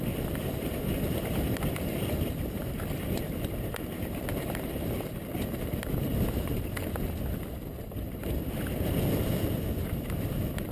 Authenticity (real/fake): fake